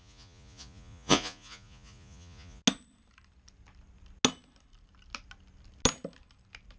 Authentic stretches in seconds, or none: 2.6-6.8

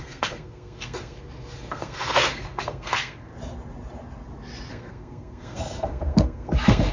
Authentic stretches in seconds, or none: 3.3-4.7

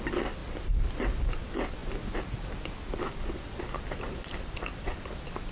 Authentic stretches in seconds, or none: 0.0-5.5

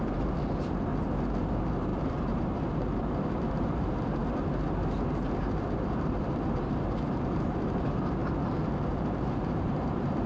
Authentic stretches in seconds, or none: 0.9-1.4; 4.2-5.2; 8.2-8.9

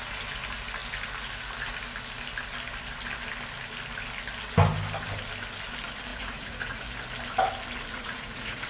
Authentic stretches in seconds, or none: 0.0-6.1; 6.8-7.9